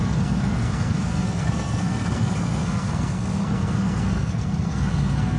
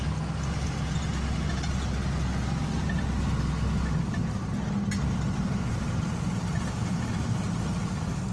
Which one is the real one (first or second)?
second